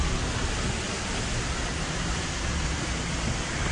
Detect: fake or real real